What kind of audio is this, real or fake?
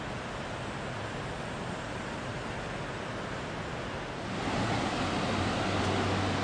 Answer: real